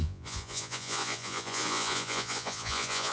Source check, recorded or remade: remade